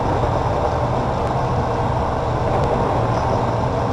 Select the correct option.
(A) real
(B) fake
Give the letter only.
A